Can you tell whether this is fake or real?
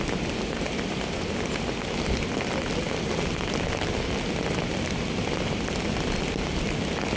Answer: real